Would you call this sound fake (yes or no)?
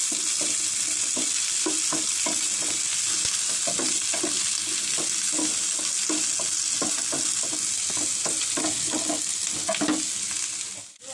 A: no